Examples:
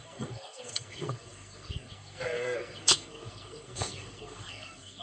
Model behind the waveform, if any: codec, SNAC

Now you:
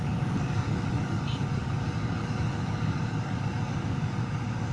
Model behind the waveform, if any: codec, DAC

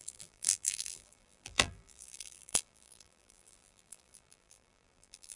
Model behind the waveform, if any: vocoder, BigVGAN v2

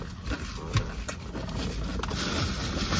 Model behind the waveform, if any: none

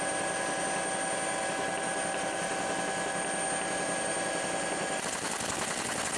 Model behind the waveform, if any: none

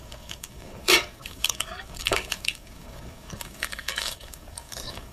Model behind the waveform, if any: codec, DAC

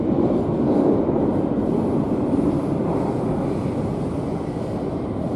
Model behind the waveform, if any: vocoder, BigVGAN v2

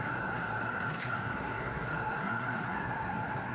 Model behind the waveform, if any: codec, SNAC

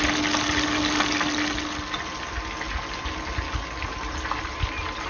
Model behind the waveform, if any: none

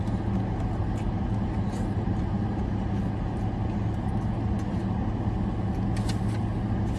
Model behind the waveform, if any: none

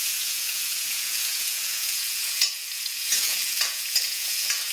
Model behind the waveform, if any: vocoder, Vocos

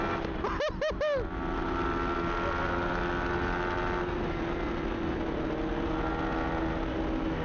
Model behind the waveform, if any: none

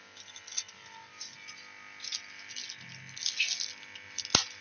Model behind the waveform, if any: none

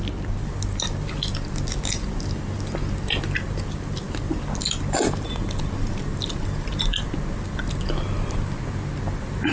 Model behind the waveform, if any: none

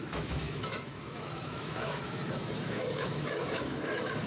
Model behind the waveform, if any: autoencoder, DAC-VAE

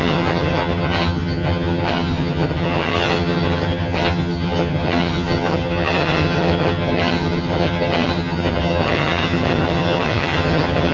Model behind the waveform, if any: vocoder, HiFi-GAN